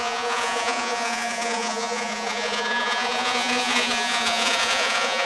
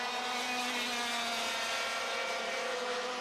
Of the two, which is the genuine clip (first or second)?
second